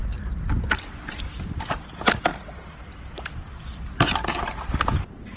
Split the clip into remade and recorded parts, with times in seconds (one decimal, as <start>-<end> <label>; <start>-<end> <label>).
0.0-5.4 recorded